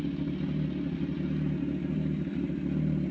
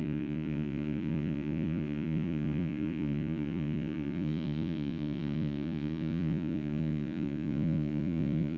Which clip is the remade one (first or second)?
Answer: second